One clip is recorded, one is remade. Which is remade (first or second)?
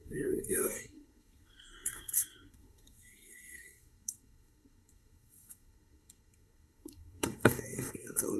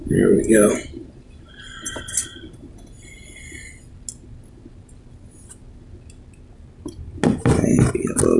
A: first